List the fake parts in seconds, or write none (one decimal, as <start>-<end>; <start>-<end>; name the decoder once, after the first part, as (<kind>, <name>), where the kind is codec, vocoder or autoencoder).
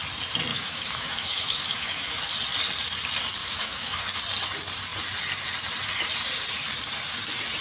0.5-2.2 (autoencoder, DAC-VAE); 3.4-4.0